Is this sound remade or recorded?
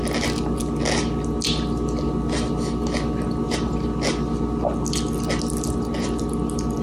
recorded